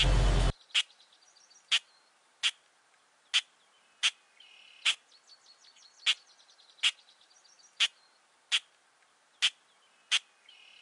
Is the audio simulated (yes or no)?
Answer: no